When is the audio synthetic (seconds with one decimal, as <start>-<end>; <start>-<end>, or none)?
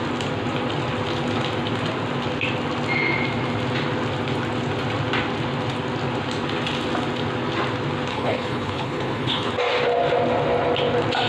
8.1-9.5